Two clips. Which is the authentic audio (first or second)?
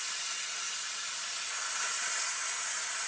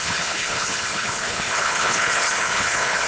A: first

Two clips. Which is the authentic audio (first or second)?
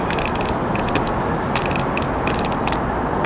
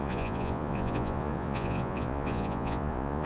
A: first